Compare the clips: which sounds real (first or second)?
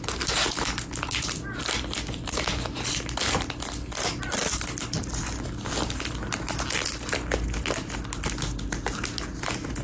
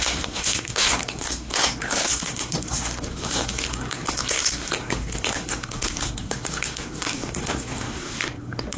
first